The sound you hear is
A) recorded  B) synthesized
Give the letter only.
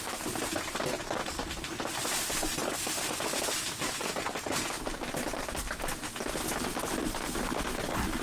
A